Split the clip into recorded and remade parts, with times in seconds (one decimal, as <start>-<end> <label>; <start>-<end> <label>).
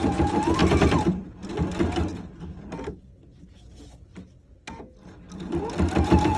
0.0-2.1 remade; 2.1-5.6 recorded; 5.6-6.4 remade